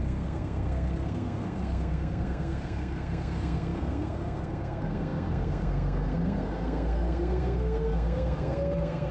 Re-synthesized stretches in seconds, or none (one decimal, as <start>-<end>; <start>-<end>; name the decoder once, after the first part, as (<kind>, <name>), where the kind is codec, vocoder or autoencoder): 0.0-9.1 (codec, SNAC)